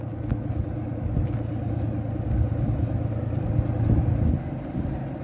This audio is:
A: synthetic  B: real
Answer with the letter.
B